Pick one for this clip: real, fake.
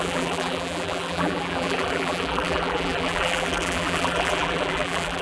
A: fake